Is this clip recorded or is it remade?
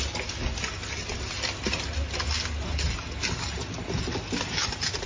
recorded